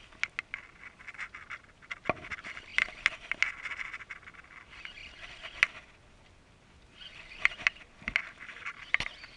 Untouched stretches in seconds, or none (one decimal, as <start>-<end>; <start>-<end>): 0.0-9.4